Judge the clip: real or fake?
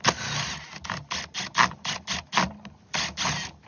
real